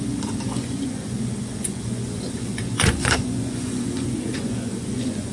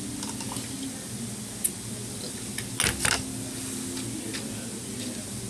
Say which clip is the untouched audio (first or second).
second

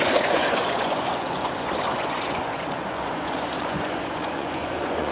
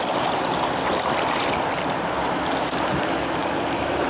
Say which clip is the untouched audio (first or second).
second